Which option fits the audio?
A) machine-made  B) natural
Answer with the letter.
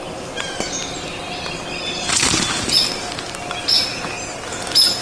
B